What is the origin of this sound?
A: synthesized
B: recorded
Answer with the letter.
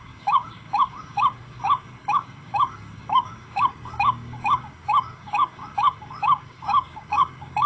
A